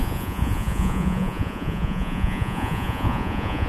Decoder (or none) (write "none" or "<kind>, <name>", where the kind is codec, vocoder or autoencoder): vocoder, Vocos